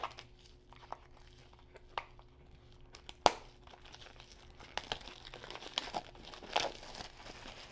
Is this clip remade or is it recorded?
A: recorded